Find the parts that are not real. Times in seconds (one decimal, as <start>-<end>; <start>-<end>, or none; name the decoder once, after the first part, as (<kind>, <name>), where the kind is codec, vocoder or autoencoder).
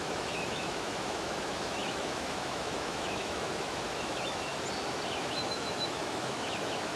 0.0-4.5 (autoencoder, DAC-VAE); 5.2-7.0